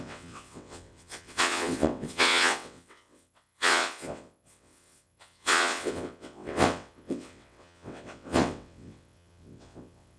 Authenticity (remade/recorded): remade